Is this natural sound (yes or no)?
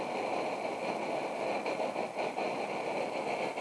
yes